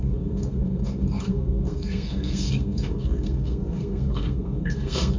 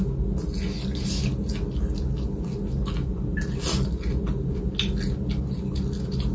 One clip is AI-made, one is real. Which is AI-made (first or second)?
first